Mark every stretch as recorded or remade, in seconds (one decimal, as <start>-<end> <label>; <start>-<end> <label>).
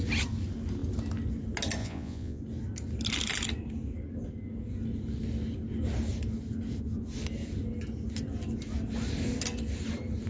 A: 0.0-1.8 recorded; 1.8-2.4 remade; 2.4-10.3 recorded